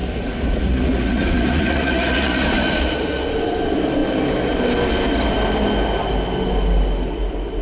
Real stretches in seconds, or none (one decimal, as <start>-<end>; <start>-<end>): 3.3-7.6